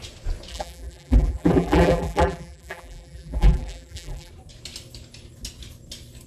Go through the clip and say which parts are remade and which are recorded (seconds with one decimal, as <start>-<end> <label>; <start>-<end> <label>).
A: 0.0-0.5 recorded; 0.5-4.3 remade; 4.3-6.3 recorded